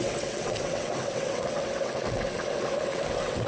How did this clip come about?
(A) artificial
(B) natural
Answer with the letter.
A